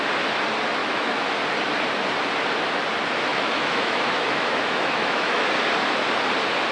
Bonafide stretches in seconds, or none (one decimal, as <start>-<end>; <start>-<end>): 0.0-0.8; 1.4-3.3; 5.5-6.7